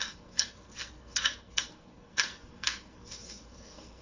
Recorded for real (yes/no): no